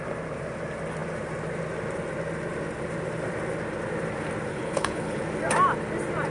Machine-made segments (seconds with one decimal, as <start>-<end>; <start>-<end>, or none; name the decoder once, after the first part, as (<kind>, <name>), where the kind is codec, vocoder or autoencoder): 4.5-5.2 (codec, HILCodec)